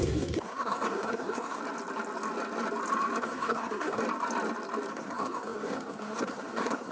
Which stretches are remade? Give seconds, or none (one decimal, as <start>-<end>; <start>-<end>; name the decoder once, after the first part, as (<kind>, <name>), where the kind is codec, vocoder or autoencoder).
0.0-1.6 (codec, SNAC); 3.2-4.0; 4.9-6.9